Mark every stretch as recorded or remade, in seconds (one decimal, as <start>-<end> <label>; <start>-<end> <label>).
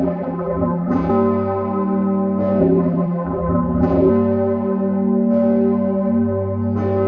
0.0-1.1 remade; 1.1-2.6 recorded; 2.6-4.1 remade; 4.1-7.1 recorded